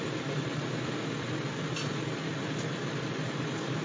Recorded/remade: remade